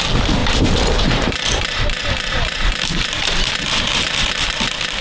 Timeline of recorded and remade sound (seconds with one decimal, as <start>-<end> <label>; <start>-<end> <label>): 0.0-0.4 recorded; 0.4-3.4 remade; 3.4-5.0 recorded